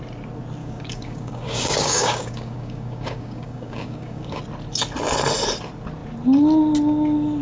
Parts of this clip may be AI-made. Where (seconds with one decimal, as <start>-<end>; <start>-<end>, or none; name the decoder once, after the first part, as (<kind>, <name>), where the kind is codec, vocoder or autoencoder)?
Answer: 0.6-4.4 (codec, DAC)